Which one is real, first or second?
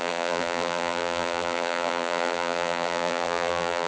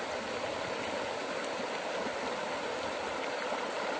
second